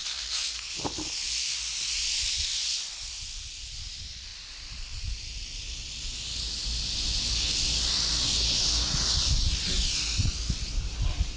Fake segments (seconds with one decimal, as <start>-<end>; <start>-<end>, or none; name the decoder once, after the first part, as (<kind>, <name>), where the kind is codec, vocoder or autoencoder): 0.0-0.8 (codec, SNAC)